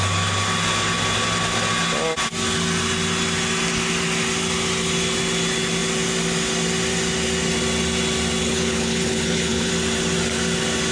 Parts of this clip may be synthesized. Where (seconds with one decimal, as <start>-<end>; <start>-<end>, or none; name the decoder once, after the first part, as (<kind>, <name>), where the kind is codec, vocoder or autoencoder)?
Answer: 8.4-9.7 (codec, HILCodec)